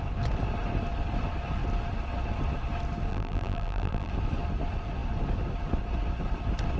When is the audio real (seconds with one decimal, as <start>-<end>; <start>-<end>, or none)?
0.0-3.1; 4.1-6.8

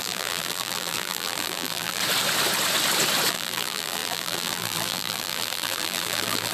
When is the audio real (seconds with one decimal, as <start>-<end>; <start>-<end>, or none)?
2.0-3.3

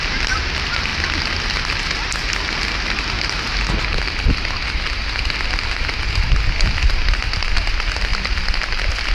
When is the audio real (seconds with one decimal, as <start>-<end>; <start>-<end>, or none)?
0.0-9.1

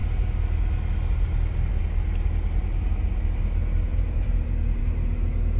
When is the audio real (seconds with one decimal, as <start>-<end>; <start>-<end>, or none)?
0.0-3.9; 4.8-5.6